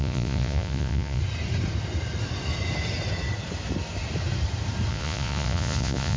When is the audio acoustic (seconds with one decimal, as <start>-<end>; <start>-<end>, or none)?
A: 1.2-4.9

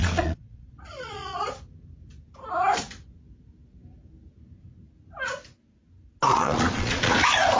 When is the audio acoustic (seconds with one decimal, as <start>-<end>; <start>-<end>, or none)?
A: 1.6-6.3; 7.1-7.6

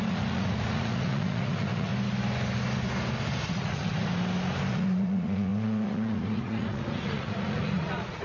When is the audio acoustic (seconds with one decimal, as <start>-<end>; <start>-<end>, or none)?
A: 1.9-3.5; 4.1-4.7

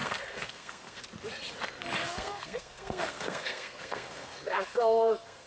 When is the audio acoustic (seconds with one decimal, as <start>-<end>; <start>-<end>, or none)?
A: 1.0-2.0

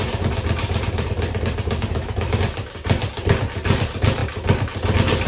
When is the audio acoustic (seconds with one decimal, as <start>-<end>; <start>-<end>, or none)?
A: 0.0-1.9; 2.4-5.3

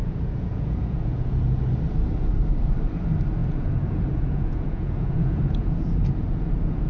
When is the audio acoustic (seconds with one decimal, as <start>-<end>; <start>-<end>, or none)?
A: 1.6-3.4

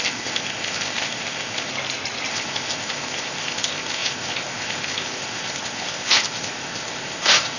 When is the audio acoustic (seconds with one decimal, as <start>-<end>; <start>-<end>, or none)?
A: 1.7-2.3